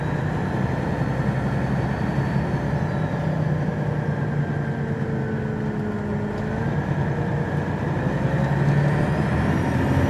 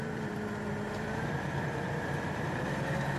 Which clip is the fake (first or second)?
second